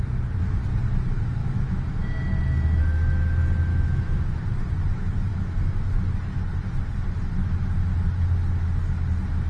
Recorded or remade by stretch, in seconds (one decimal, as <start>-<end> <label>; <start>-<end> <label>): 0.0-1.4 recorded; 1.4-2.0 remade; 2.0-3.7 recorded; 3.7-4.2 remade; 4.2-5.3 recorded; 5.3-6.2 remade; 6.2-9.5 recorded